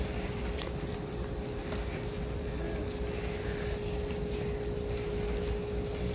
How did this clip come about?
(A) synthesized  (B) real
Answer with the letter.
B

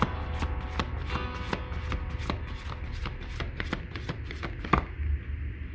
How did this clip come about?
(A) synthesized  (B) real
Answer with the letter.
B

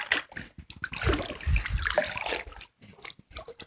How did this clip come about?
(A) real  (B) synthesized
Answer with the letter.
A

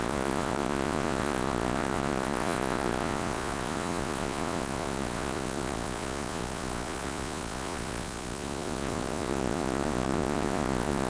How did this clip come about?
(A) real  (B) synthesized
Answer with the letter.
B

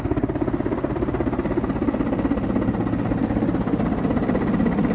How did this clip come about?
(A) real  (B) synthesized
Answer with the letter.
A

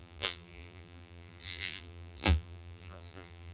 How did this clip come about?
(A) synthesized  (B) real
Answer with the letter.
A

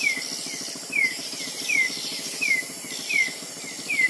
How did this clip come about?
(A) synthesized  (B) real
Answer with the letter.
B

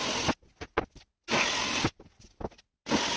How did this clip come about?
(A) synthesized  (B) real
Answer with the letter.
B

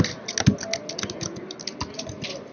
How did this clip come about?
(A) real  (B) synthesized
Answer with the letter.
A